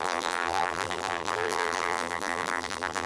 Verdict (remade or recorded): remade